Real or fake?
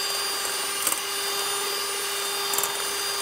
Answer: real